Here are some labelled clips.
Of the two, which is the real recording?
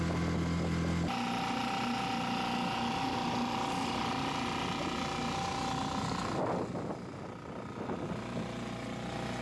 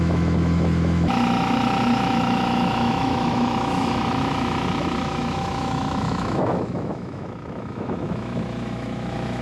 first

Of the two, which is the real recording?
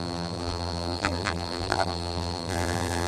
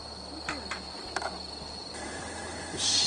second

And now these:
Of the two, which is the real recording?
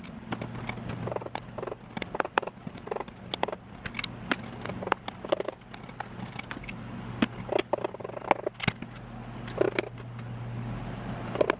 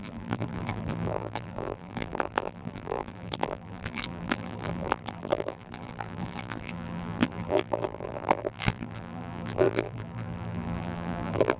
first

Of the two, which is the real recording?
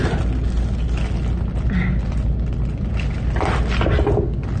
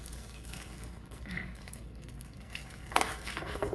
first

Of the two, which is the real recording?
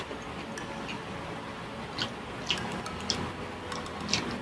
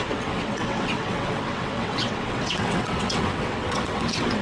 first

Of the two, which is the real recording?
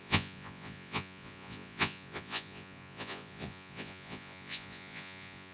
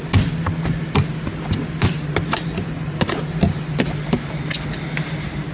second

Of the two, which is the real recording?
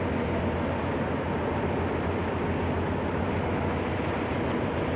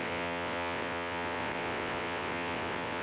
first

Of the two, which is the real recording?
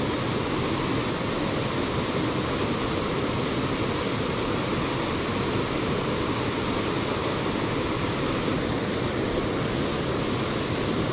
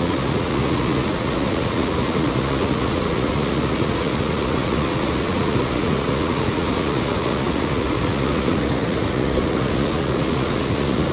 first